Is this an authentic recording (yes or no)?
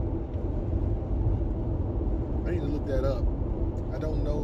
yes